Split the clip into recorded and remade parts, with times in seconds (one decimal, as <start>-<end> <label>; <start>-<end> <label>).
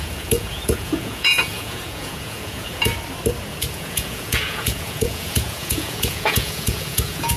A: 0.0-2.9 remade; 2.9-3.7 recorded; 3.7-7.4 remade